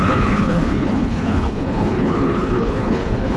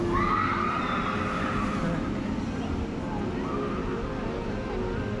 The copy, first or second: first